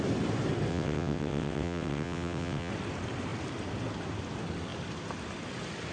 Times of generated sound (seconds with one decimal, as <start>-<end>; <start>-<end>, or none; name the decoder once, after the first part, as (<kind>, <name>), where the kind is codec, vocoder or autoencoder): 0.7-2.7 (vocoder, WaveNeXt)